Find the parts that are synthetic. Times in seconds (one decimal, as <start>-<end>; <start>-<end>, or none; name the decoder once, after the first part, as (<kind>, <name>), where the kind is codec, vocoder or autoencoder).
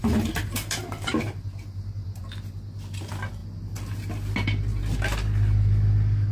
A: 0.0-2.2 (vocoder, BigVGAN v2)